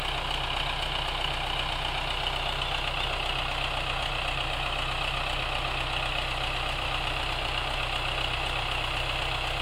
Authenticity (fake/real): real